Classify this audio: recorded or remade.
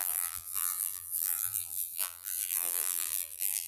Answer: remade